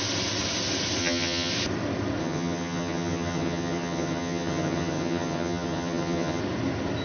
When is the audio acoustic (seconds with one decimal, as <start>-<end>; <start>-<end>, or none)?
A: 0.0-1.0; 1.5-2.2; 6.4-7.0